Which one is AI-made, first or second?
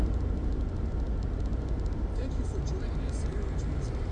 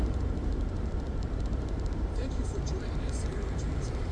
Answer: second